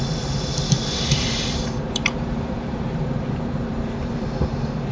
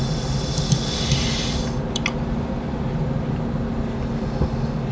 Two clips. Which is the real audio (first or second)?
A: second